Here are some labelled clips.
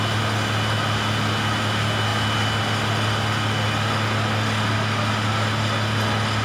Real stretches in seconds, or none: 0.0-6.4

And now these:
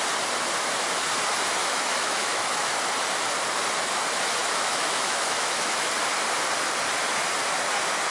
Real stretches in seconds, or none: 0.0-1.6; 2.7-4.4; 5.9-8.1